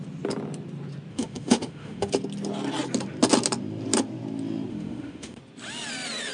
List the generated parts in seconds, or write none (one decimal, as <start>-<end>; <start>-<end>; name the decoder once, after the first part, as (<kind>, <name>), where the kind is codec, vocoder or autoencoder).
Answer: 1.1-2.1 (autoencoder, DAC-VAE); 4.7-5.4